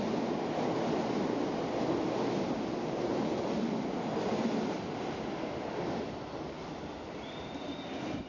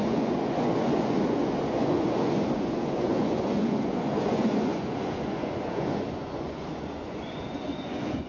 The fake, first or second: second